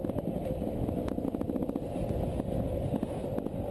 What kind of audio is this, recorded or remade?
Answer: recorded